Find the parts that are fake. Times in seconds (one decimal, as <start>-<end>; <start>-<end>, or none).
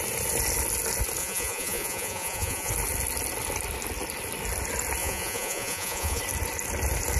1.2-2.7; 5.0-6.2